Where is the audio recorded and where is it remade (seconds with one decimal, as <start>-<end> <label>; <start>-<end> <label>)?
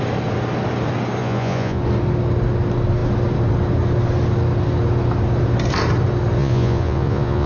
0.0-1.2 recorded; 1.2-1.8 remade; 1.8-6.4 recorded; 6.4-7.5 remade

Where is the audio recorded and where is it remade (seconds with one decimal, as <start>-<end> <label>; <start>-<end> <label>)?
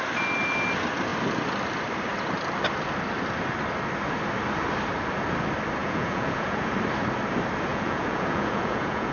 0.0-5.8 recorded; 5.8-6.7 remade; 6.7-7.7 recorded; 7.7-9.1 remade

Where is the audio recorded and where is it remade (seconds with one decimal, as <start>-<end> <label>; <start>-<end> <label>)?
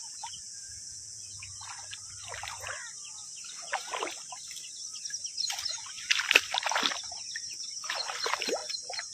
0.0-1.5 remade; 1.5-9.1 recorded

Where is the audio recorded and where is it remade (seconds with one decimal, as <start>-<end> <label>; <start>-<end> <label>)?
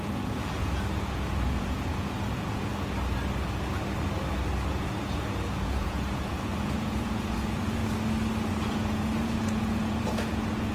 0.0-2.7 remade; 2.7-4.7 recorded; 4.7-7.8 remade; 7.8-8.5 recorded; 8.5-10.7 remade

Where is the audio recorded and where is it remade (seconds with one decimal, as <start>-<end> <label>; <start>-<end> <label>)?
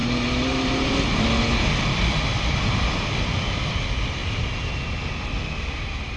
0.0-6.2 recorded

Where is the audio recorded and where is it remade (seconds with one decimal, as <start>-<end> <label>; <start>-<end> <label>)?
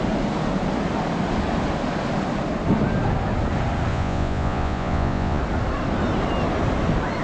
0.0-3.9 recorded; 3.9-5.4 remade; 5.4-7.2 recorded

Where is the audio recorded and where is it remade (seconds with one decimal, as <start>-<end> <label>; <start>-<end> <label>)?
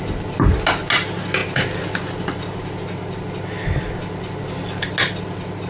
0.0-5.7 recorded